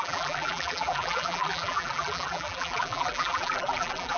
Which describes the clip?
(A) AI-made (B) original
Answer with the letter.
A